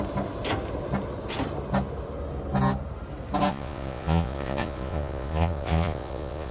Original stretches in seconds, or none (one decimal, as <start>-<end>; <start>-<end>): 0.0-3.5